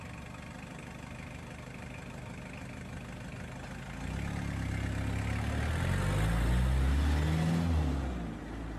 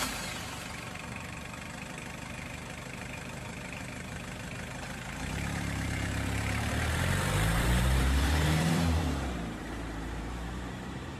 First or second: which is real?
first